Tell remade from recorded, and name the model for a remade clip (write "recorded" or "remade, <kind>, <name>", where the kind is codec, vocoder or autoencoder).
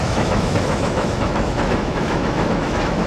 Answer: remade, autoencoder, DAC-VAE